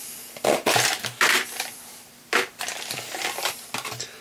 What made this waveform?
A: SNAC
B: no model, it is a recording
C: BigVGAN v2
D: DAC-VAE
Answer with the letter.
C